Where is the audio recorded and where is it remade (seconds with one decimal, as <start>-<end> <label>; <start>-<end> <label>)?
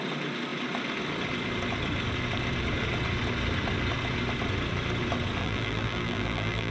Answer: 0.0-5.4 recorded; 5.4-6.7 remade